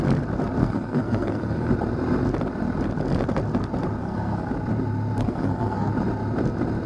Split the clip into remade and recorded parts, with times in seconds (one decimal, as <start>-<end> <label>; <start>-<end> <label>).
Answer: 0.0-0.6 recorded; 0.6-1.7 remade; 1.7-4.0 recorded; 4.0-4.5 remade; 4.5-5.2 recorded; 5.2-5.9 remade; 5.9-6.9 recorded